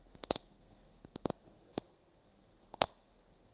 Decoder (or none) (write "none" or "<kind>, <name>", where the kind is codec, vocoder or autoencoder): codec, SNAC